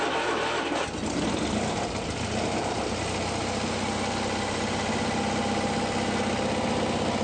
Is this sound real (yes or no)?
yes